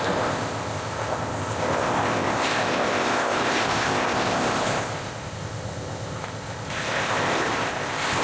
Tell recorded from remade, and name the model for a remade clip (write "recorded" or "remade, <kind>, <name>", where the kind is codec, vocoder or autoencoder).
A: remade, codec, ZipCodec